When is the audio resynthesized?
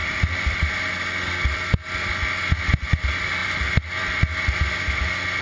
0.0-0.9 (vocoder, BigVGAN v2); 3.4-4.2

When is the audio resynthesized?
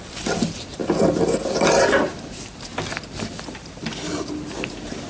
0.0-0.8 (vocoder, BigVGAN v2); 1.7-2.7; 3.4-3.8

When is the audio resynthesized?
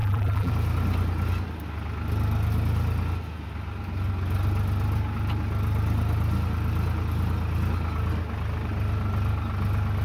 0.0-0.5 (vocoder, BigVGAN v2)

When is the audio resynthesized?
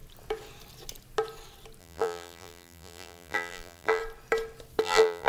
1.8-4.0 (vocoder, BigVGAN v2); 4.8-5.3